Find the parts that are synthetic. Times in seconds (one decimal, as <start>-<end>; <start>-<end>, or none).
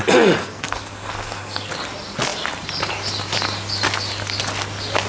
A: 0.4-1.7